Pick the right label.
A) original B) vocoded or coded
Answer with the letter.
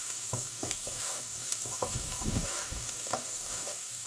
B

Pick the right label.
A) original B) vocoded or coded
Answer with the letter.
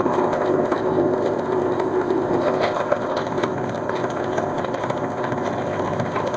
B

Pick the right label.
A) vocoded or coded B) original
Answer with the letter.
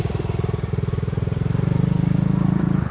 A